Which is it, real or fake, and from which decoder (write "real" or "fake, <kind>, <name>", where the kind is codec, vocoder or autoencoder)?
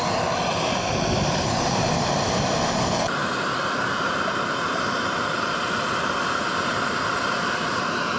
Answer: fake, vocoder, BigVGAN v2